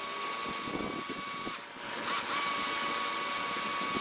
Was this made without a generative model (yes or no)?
yes